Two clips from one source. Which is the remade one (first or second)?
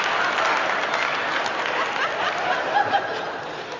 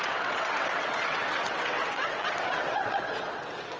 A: second